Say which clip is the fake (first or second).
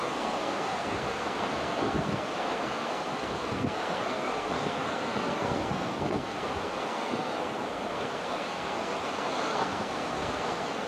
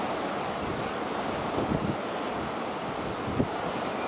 first